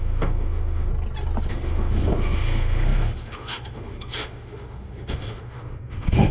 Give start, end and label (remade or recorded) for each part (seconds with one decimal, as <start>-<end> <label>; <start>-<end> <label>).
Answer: 0.0-0.9 remade; 0.9-1.5 recorded; 1.5-6.3 remade